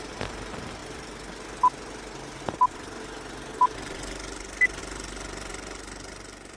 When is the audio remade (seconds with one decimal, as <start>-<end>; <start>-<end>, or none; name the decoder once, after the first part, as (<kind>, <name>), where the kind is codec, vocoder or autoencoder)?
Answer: none